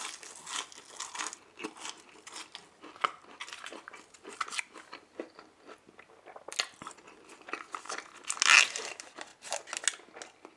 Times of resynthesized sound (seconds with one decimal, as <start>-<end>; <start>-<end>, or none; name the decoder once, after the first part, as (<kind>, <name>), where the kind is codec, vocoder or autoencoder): none